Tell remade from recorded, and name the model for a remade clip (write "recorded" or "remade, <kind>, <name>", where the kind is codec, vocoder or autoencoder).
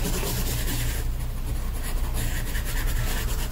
recorded